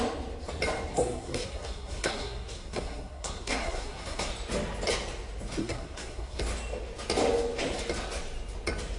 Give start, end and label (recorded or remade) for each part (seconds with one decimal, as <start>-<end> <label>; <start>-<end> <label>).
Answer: 0.0-0.9 recorded; 0.9-4.3 remade; 4.3-5.6 recorded; 5.6-6.4 remade; 6.4-9.0 recorded